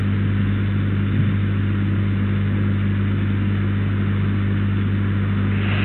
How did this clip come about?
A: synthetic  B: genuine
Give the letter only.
B